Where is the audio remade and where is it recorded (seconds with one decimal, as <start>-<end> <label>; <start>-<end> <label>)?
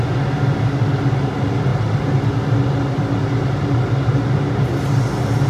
0.0-5.5 recorded